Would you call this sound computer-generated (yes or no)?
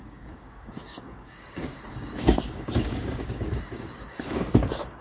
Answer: yes